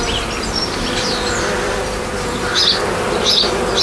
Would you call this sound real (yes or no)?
yes